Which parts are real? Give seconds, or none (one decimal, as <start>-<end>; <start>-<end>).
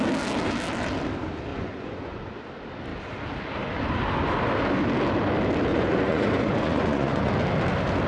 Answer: 0.0-1.5; 2.2-5.7; 7.3-8.1